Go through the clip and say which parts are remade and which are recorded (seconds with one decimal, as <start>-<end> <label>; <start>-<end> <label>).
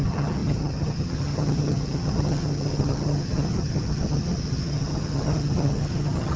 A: 0.0-6.4 remade